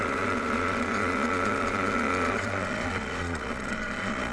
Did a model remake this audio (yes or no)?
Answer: yes